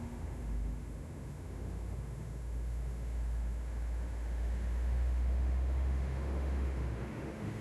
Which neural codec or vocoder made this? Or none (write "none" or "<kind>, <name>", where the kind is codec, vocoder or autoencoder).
autoencoder, DAC-VAE